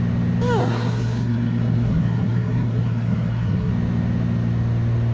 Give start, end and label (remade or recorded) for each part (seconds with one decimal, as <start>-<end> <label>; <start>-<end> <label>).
0.0-0.6 recorded; 0.6-3.7 remade; 3.7-5.1 recorded